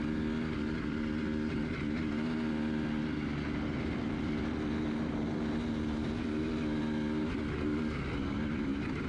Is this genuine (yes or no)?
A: yes